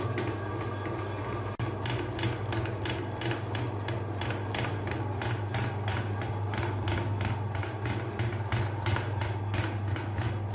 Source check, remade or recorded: recorded